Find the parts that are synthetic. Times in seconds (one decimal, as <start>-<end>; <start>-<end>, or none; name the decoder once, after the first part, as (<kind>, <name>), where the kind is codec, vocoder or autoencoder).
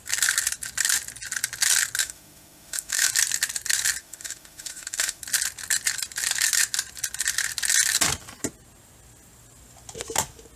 2.0-3.1 (autoencoder, DAC-VAE); 4.0-5.2